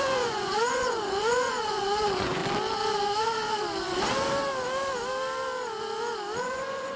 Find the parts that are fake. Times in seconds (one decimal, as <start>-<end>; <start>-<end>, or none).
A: 0.0-2.4; 6.4-7.0